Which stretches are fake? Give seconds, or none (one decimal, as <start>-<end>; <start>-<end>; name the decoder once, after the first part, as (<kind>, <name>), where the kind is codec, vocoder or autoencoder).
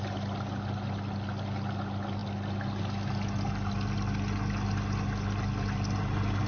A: none